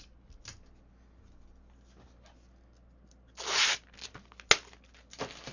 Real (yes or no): yes